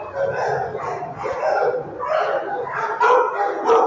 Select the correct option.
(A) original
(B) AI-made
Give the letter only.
A